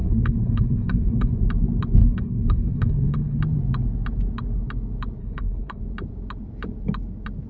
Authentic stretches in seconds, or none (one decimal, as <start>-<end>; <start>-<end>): 1.3-2.0; 3.4-5.2; 5.8-7.5